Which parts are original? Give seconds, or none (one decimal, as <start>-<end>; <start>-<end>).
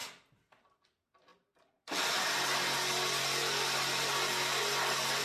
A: 0.0-5.2